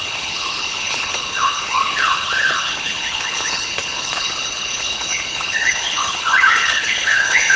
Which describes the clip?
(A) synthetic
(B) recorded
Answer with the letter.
A